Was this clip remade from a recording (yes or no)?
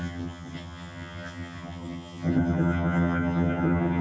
yes